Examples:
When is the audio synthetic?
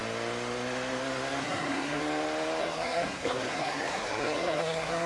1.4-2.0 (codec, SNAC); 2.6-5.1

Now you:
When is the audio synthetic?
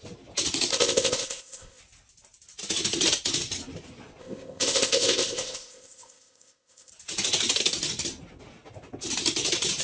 0.7-1.8 (codec, ZipCodec); 4.2-6.9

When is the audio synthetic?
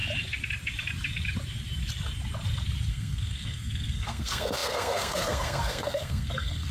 2.9-6.7 (codec, SNAC)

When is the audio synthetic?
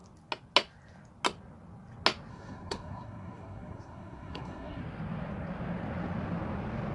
2.3-4.8 (codec, SNAC)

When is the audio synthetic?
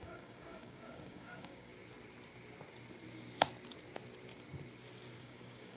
0.0-1.7 (codec, DAC); 5.2-5.8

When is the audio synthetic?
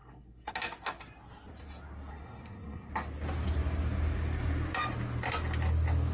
0.0-0.5 (codec, SNAC); 2.1-2.9